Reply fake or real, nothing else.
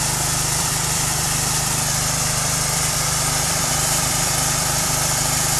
fake